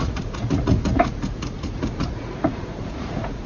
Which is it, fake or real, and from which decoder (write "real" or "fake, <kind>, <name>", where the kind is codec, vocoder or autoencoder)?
fake, vocoder, Vocos